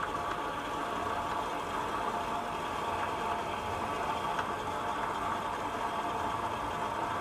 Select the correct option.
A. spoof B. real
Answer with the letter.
B